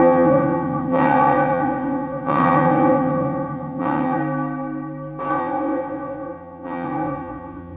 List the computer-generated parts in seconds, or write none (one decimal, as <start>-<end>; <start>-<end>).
0.0-4.2; 5.3-7.8